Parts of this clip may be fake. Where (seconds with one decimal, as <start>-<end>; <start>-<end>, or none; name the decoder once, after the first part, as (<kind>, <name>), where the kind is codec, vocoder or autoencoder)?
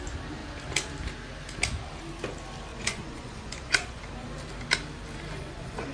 2.7-4.0 (vocoder, Vocos); 5.4-5.9